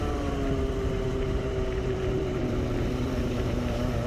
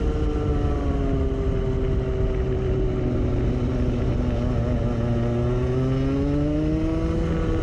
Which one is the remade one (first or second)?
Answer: first